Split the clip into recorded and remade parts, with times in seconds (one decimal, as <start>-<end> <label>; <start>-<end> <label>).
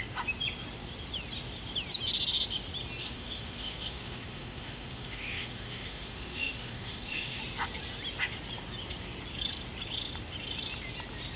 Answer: 0.0-3.0 recorded; 3.0-7.4 remade; 7.4-11.4 recorded